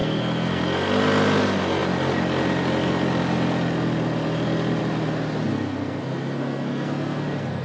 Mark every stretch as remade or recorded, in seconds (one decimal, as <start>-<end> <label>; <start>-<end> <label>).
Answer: 0.0-0.6 remade; 0.6-5.5 recorded; 5.5-7.6 remade